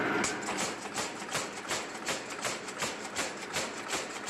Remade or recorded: recorded